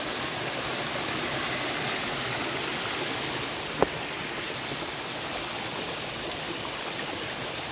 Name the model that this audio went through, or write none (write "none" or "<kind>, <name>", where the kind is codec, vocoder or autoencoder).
none